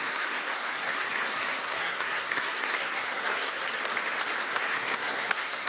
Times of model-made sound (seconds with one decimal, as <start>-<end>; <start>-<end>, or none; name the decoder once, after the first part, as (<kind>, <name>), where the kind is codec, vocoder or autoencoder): 0.0-3.6 (codec, SNAC); 4.4-5.7